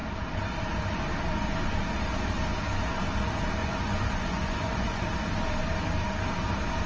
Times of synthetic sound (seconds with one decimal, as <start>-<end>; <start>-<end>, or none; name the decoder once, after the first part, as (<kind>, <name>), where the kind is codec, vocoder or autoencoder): 3.6-5.1 (vocoder, Vocos)